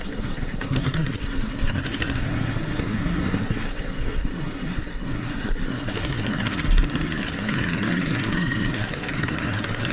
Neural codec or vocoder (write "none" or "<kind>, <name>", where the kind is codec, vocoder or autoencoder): codec, SNAC